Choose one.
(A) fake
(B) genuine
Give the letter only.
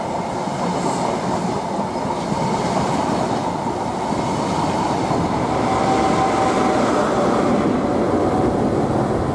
B